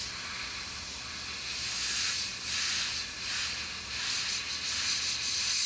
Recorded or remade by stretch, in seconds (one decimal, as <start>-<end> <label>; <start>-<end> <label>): 0.0-5.7 recorded